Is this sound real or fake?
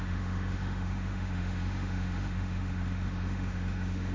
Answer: fake